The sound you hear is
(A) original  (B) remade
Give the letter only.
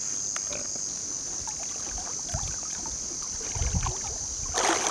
A